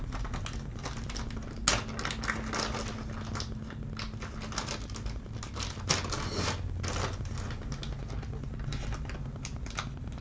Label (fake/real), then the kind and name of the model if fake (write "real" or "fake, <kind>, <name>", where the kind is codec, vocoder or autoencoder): real